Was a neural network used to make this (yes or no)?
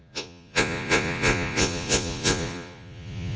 yes